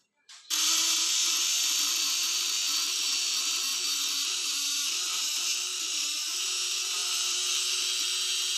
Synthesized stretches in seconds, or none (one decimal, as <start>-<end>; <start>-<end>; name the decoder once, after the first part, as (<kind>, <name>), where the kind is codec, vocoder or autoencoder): none

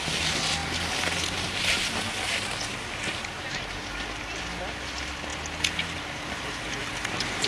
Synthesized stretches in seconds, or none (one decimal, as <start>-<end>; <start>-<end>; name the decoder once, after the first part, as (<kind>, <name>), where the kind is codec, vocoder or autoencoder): none

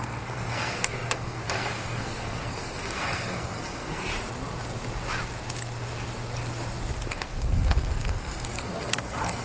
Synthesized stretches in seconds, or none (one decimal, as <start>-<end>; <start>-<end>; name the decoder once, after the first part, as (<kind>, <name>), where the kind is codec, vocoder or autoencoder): 0.0-4.1 (codec, SNAC); 7.1-9.4

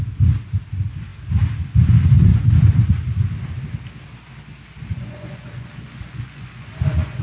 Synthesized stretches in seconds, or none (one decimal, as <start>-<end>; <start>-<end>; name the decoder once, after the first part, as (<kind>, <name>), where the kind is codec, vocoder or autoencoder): 4.9-7.2 (vocoder, Vocos)

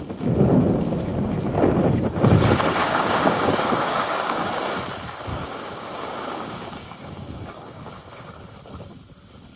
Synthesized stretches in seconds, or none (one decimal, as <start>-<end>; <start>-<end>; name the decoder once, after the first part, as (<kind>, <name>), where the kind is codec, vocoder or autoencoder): 2.8-4.7 (codec, DAC); 5.3-8.0

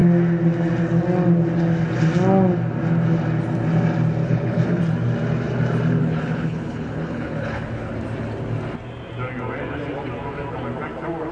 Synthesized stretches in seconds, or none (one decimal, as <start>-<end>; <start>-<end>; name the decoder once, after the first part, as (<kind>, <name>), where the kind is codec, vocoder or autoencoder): 4.2-4.8 (codec, HILCodec); 6.0-7.9

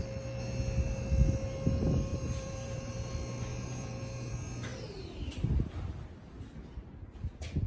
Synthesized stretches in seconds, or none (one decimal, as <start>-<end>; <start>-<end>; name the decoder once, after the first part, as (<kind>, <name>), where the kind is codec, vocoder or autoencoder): 2.1-3.1 (vocoder, BigVGAN v2); 3.5-4.3

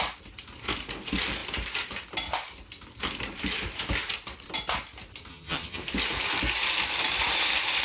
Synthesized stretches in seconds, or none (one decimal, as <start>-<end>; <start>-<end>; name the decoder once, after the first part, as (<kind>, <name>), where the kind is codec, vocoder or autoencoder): 5.3-5.8 (vocoder, HiFi-GAN)